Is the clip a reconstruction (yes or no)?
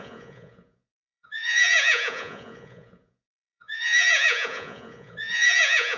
yes